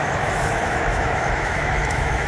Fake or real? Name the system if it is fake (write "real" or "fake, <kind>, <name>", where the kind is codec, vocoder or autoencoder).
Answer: fake, autoencoder, DAC-VAE